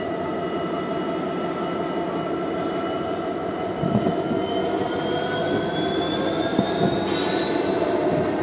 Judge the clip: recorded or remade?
recorded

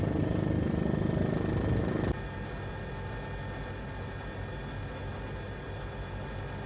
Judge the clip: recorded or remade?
recorded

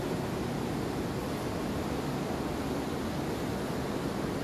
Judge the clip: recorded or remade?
recorded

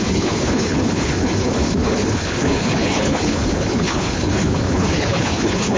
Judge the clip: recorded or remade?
remade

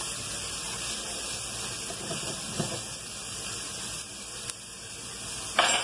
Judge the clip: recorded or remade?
recorded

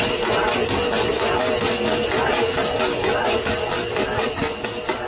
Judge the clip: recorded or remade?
recorded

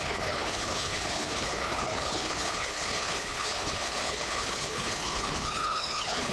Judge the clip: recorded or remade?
remade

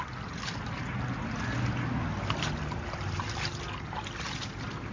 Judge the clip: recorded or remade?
recorded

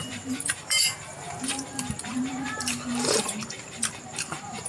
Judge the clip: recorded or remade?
remade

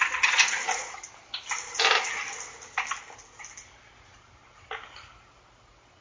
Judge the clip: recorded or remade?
recorded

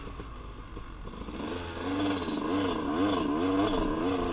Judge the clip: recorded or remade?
recorded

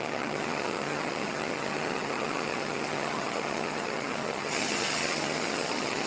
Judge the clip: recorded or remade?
remade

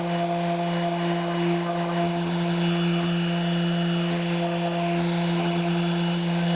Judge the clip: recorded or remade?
recorded